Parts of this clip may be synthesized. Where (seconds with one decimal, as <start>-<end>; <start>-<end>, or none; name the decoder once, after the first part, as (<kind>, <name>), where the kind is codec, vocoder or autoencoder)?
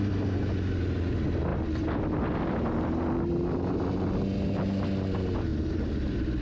5.5-6.4 (vocoder, BigVGAN v2)